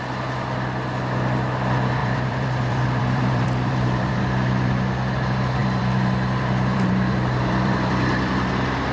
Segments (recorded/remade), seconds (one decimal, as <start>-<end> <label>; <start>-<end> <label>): 0.0-2.0 recorded; 2.0-4.2 remade; 4.2-5.6 recorded; 5.6-8.5 remade; 8.5-8.9 recorded